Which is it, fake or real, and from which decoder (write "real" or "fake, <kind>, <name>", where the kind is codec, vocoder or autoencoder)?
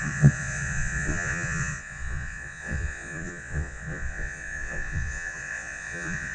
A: fake, vocoder, Vocos